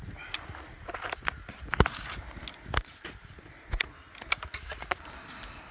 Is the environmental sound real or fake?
real